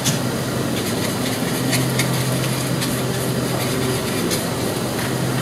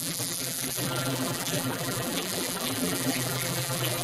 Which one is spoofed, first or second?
second